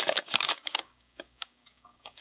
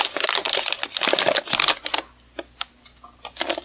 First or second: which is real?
second